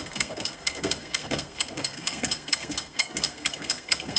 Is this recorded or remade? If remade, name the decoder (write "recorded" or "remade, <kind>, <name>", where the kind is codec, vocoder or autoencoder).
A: remade, codec, SNAC